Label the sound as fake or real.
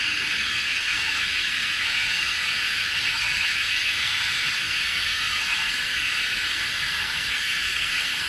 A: fake